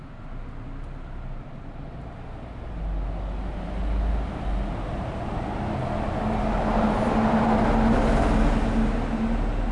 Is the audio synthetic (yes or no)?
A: no